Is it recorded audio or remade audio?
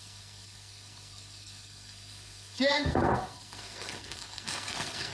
remade